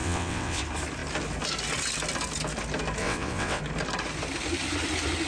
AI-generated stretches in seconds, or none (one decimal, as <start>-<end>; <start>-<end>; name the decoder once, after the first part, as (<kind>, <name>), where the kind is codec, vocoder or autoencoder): 0.0-0.6 (vocoder, WaveNeXt); 3.0-3.6